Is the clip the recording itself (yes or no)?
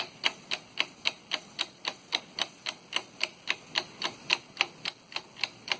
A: yes